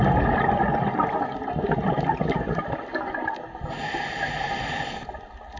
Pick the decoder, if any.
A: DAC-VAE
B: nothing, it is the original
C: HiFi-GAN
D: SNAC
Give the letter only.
B